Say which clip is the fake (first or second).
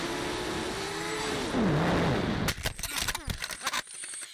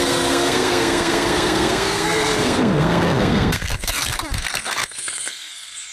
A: second